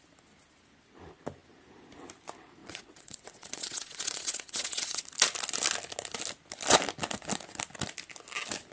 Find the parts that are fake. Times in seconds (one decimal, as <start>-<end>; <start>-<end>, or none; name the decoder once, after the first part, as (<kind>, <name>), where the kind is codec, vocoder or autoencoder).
2.6-5.0 (vocoder, WaveNeXt)